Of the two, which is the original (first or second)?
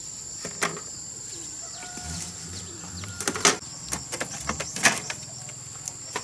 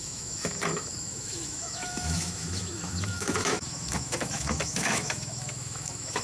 first